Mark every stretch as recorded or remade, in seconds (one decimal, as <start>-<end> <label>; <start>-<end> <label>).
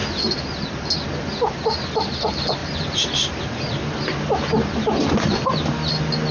0.0-6.3 recorded